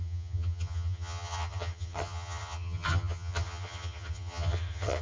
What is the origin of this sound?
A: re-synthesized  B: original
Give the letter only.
A